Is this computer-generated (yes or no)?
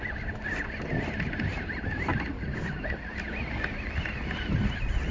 no